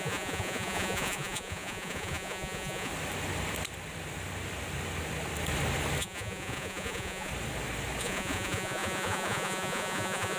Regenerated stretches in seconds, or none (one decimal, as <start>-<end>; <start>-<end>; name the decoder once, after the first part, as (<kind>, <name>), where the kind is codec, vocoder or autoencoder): 0.0-2.9 (vocoder, Vocos); 6.0-7.3; 8.0-10.4